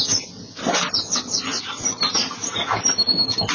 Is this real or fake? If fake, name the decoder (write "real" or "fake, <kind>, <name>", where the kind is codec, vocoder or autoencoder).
real